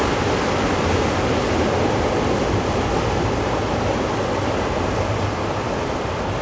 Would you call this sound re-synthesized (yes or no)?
no